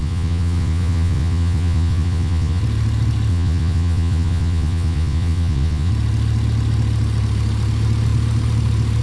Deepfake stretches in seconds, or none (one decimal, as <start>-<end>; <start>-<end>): 0.0-2.6; 3.3-5.9